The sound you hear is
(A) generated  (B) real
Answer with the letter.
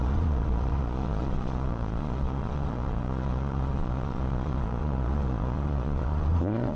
A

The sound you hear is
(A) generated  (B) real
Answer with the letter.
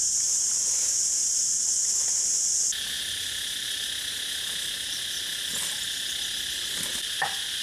B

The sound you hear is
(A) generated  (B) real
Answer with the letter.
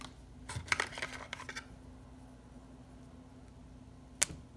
B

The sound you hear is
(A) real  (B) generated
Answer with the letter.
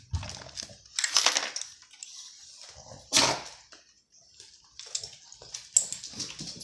A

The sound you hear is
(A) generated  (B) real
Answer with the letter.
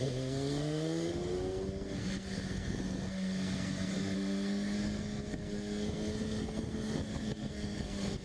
A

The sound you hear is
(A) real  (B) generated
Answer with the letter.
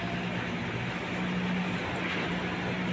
A